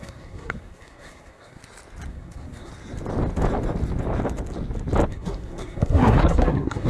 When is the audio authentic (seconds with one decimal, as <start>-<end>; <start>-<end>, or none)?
1.6-2.1; 2.7-5.1